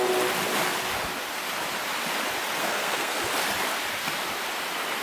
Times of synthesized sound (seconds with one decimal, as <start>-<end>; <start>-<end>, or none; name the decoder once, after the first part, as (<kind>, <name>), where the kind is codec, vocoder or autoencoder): 2.6-3.2 (codec, SNAC)